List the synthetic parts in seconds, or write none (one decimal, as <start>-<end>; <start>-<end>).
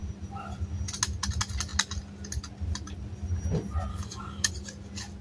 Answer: 3.9-4.5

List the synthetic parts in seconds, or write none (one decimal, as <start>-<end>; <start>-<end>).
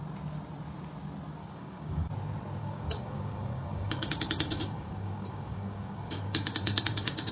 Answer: 1.4-2.1; 2.6-7.3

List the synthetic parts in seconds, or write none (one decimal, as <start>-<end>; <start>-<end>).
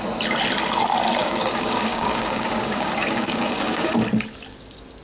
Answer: 1.2-3.9